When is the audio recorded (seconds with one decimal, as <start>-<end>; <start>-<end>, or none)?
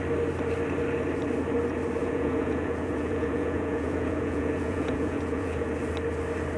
0.0-2.0; 5.7-6.6